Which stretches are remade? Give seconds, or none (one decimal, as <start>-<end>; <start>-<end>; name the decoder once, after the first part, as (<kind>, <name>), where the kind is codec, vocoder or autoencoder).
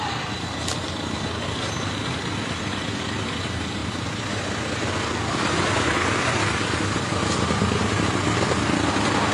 3.8-4.7 (vocoder, BigVGAN v2)